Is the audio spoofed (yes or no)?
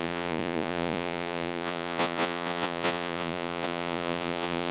yes